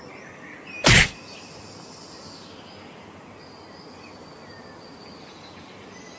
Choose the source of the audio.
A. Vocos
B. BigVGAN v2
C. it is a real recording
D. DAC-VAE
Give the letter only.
C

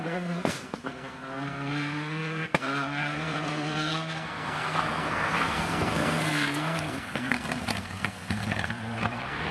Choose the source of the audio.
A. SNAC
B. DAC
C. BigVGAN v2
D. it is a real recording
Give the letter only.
A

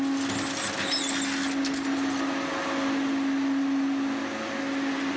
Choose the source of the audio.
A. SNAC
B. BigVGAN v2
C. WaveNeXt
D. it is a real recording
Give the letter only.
D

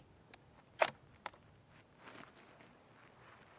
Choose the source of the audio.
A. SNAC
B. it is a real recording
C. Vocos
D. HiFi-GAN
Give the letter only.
B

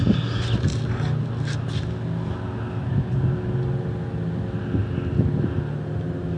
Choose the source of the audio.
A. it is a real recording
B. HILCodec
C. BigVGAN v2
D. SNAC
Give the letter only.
A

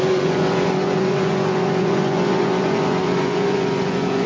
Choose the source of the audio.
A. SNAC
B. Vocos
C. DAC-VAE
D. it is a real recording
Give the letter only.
B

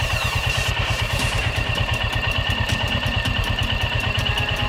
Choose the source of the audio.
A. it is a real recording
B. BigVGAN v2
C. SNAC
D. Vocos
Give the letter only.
B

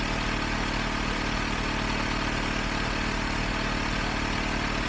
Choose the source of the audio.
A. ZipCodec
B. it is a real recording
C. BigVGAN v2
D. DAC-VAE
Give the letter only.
B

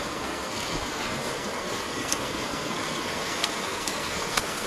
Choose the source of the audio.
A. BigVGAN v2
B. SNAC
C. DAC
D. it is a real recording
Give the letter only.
B